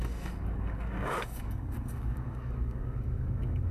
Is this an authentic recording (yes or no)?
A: no